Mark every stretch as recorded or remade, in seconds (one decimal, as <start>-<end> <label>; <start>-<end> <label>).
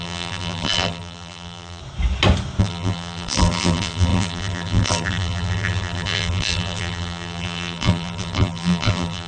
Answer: 0.0-1.8 remade; 1.8-2.6 recorded; 2.6-9.3 remade